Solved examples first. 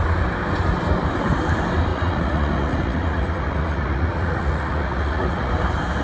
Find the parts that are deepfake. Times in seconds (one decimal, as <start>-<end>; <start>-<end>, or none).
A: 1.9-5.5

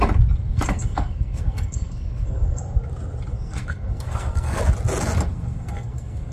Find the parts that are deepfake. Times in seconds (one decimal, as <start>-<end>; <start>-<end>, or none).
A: 0.5-2.6; 3.3-4.6; 5.3-6.3

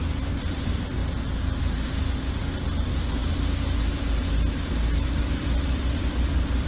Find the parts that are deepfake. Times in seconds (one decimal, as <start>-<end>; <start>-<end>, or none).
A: 0.0-1.0; 1.6-2.9; 5.2-6.7

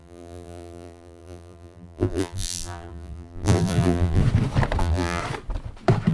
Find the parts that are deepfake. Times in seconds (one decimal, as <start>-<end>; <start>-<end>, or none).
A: 0.0-4.2; 4.8-5.2

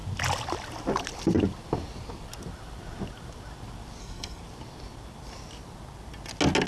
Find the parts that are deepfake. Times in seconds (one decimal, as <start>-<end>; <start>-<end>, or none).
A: 4.0-4.4

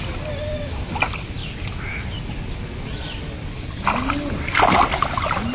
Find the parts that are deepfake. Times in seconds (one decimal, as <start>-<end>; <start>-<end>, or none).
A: none

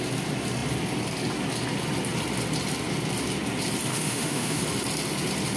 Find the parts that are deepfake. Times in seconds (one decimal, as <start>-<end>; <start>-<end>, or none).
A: 3.9-4.6